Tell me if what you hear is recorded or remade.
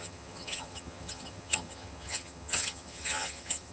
remade